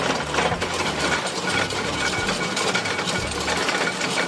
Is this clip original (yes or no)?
yes